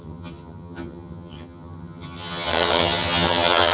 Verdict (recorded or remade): remade